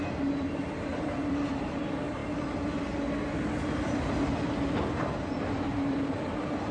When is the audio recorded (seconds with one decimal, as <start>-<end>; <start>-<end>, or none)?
2.2-4.9

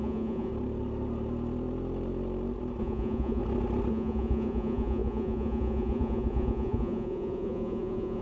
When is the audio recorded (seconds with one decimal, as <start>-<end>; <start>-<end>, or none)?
0.5-2.8; 3.4-3.9

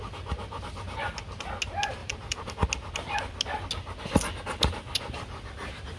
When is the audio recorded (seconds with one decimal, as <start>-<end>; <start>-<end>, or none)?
0.0-2.0; 2.5-6.0

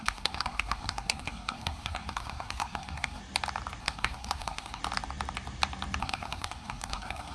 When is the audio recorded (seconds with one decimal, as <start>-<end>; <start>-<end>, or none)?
3.2-3.8; 4.8-6.0

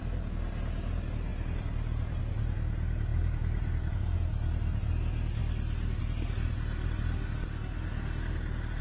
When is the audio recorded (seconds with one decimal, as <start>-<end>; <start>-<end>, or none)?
0.0-1.3; 2.2-3.1; 3.9-8.8

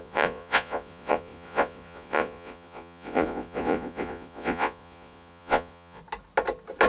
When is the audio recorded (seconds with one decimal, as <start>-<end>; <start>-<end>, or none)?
6.0-6.9

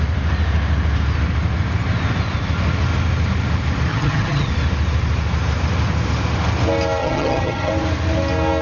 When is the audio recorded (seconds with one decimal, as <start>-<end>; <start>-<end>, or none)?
0.0-3.9; 4.5-7.0; 7.7-8.6